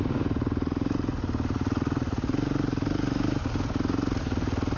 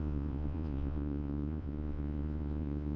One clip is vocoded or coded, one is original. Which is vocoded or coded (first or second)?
second